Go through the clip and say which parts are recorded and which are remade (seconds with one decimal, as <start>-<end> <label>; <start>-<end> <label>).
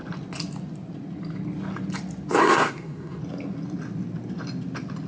0.0-2.4 recorded; 2.4-3.2 remade; 3.2-5.1 recorded